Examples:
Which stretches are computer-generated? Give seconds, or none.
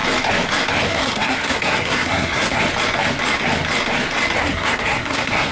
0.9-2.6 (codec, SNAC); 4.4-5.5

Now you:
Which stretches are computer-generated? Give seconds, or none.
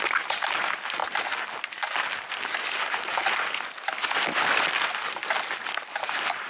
0.0-1.0 (vocoder, BigVGAN v2); 4.6-5.2; 5.8-6.5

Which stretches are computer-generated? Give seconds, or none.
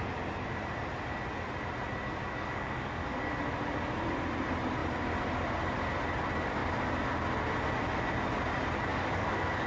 2.2-3.3 (codec, DAC); 8.9-9.7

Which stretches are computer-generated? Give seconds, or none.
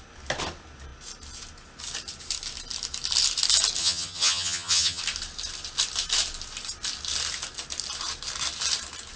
3.8-5.0 (vocoder, HiFi-GAN)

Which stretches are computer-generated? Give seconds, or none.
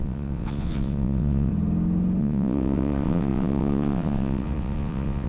0.0-1.5 (vocoder, WaveNeXt); 2.2-5.3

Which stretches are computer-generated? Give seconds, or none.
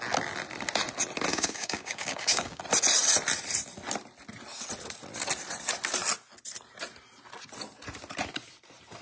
1.3-2.6 (codec, DAC)